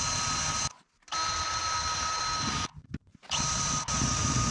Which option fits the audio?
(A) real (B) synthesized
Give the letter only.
A